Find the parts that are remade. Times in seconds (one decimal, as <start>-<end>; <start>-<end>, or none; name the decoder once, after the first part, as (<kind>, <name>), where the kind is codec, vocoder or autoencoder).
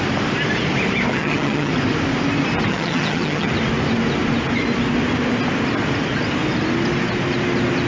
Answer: 1.1-1.7 (vocoder, HiFi-GAN); 2.7-3.5